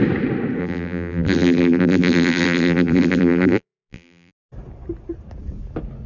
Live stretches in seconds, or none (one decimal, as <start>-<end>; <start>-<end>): 0.0-0.6; 4.3-6.1